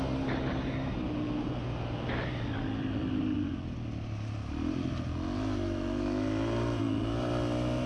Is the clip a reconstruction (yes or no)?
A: no